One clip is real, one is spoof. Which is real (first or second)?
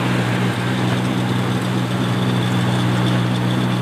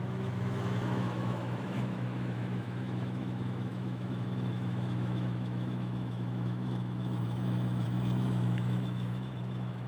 first